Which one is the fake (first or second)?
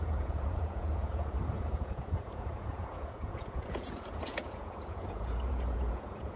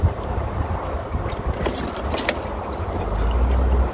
first